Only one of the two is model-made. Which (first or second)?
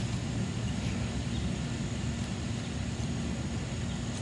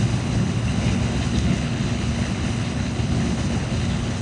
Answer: second